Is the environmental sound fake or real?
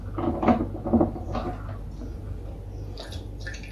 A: real